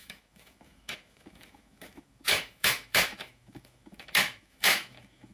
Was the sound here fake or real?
fake